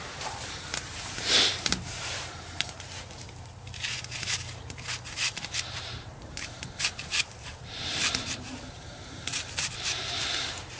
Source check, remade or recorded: remade